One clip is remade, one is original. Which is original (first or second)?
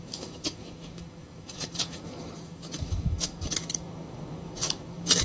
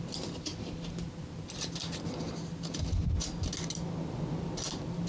second